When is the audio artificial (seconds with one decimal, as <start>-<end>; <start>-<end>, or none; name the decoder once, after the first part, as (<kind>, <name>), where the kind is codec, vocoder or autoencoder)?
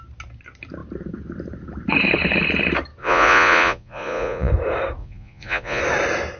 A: 3.0-4.5 (vocoder, Vocos); 5.0-5.8